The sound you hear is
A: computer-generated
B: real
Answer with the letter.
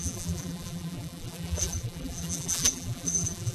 A